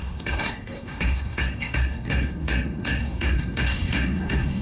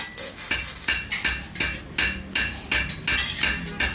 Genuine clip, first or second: second